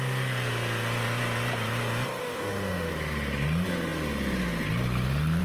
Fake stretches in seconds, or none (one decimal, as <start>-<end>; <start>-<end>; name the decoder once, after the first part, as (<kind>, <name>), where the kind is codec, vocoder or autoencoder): 2.2-2.9 (autoencoder, DAC-VAE)